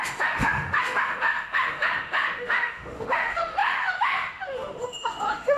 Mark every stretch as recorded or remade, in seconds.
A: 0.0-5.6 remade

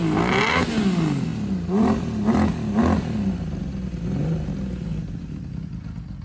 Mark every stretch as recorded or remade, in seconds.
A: 0.0-6.2 recorded